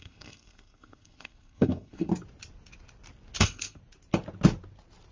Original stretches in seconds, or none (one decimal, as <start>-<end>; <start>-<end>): 2.1-3.4; 3.8-5.1